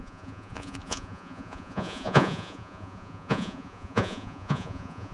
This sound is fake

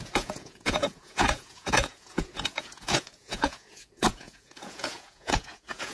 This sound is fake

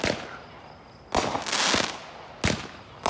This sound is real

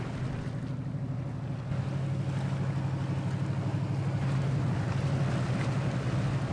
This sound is real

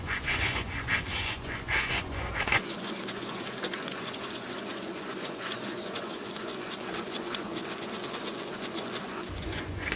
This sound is fake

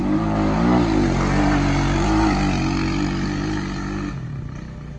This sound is real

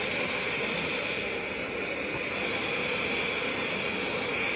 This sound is real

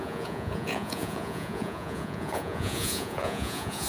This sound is fake